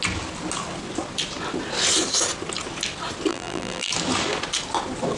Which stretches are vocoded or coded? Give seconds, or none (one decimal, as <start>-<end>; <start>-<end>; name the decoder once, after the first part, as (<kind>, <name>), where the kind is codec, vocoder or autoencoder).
3.3-3.9 (vocoder, BigVGAN v2)